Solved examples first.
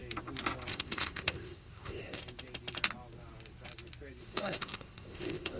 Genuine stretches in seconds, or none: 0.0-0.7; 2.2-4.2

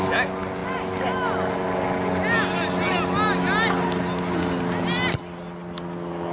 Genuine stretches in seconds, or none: 0.0-6.3